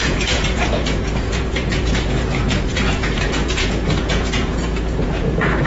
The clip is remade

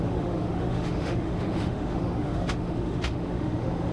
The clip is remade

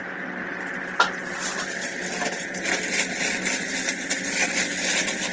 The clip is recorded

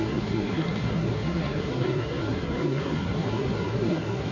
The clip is remade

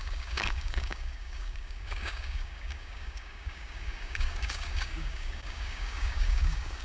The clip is remade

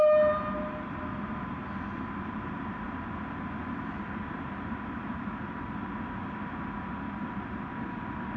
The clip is recorded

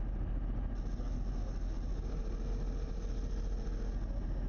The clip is recorded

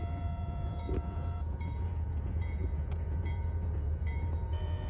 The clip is remade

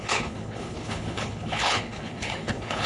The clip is remade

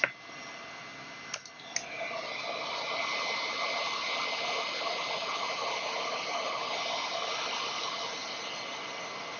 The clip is recorded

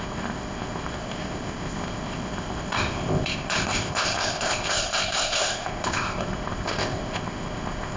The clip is remade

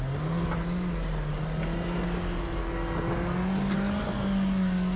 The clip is recorded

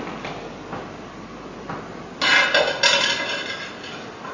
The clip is recorded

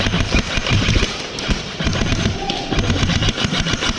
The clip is remade